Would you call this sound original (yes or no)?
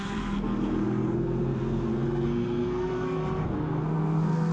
no